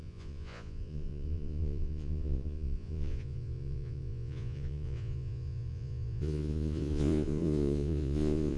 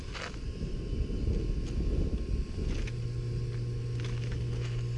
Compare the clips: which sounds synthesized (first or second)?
first